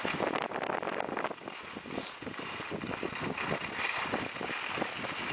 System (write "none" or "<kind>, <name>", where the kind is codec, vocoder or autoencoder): none